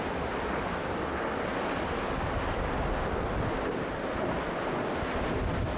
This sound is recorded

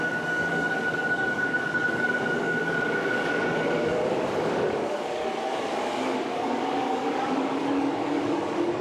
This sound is remade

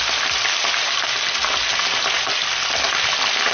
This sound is recorded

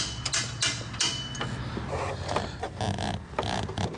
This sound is recorded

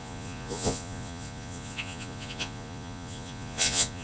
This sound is remade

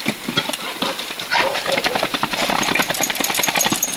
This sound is remade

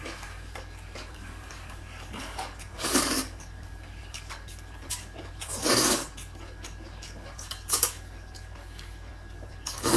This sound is remade